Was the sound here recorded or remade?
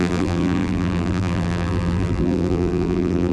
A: remade